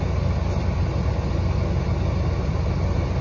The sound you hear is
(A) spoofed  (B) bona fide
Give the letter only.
B